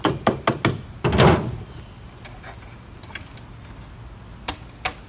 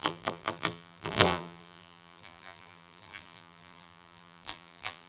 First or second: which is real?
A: first